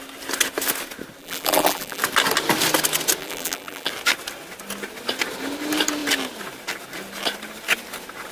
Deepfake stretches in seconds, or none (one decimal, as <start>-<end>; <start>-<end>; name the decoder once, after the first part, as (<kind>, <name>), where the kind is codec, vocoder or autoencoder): 1.2-2.0 (vocoder, BigVGAN v2); 3.2-3.9